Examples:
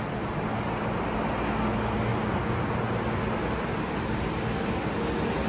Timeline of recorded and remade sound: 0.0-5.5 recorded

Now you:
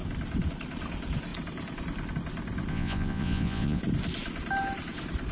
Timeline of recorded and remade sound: 0.0-2.7 recorded; 2.7-3.8 remade; 3.8-5.3 recorded

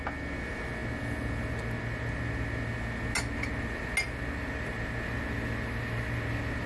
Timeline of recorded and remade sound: 0.0-6.7 recorded

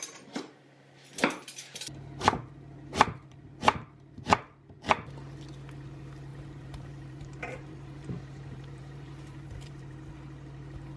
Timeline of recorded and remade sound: 0.0-2.9 recorded; 2.9-4.4 remade; 4.4-6.3 recorded; 6.3-10.1 remade; 10.1-11.0 recorded